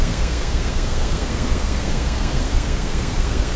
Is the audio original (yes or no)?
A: no